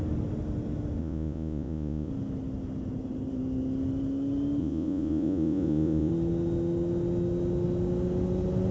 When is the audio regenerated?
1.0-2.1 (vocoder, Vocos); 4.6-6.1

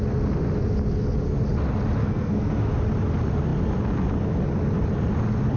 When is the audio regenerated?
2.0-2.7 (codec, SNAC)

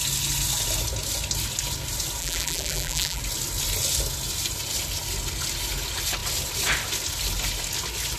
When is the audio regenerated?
2.2-3.2 (vocoder, BigVGAN v2)

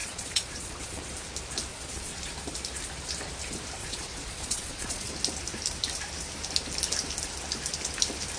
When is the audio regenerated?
0.0-1.0 (vocoder, Vocos); 1.7-2.2; 3.8-5.1